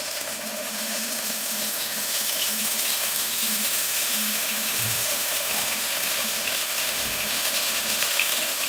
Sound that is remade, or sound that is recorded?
remade